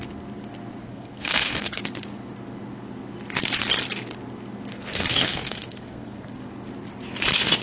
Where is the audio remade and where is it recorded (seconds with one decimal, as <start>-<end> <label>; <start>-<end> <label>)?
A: 0.0-0.8 recorded; 0.8-1.8 remade; 1.8-4.7 recorded; 4.7-6.5 remade; 6.5-7.6 recorded

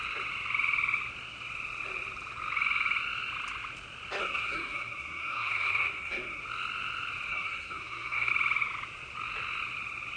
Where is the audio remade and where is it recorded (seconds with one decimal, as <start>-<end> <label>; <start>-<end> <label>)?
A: 0.0-4.2 recorded; 4.2-6.4 remade; 6.4-7.3 recorded; 7.3-8.3 remade; 8.3-10.2 recorded

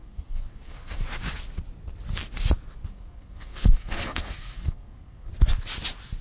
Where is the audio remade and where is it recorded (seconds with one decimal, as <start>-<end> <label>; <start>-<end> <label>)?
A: 0.0-1.0 remade; 1.0-2.9 recorded; 2.9-5.3 remade; 5.3-6.2 recorded